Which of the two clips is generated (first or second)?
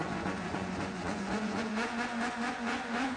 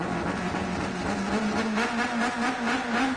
first